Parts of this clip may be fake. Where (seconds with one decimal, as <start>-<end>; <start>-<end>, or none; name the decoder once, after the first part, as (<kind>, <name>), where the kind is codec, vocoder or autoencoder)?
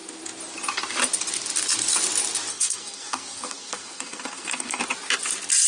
2.5-4.8 (codec, SNAC)